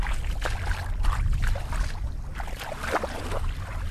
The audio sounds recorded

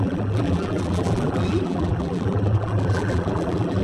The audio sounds remade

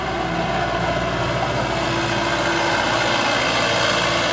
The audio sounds recorded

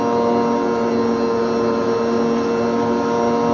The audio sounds recorded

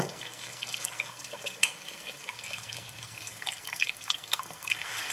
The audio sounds remade